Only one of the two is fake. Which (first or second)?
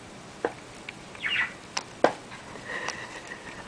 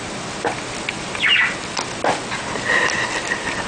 first